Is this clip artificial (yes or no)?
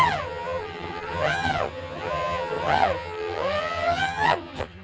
yes